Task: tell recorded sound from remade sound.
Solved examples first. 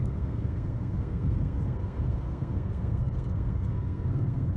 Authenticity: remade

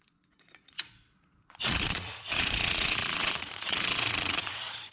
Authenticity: remade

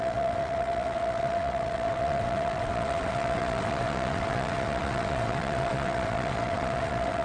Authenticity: remade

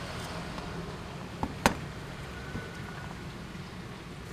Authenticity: recorded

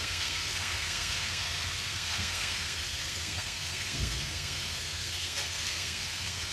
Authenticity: remade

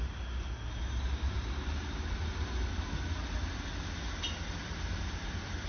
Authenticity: recorded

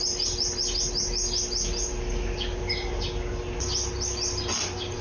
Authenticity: recorded